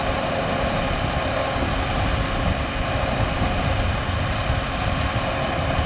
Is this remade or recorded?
recorded